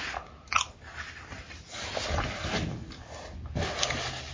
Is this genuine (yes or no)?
yes